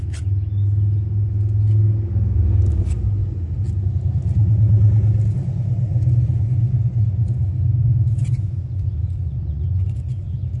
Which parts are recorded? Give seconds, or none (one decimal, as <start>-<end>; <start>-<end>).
0.0-5.9